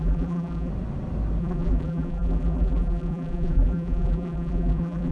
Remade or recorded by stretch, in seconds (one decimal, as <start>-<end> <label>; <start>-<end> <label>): 0.0-0.7 remade; 0.7-1.4 recorded; 1.4-5.1 remade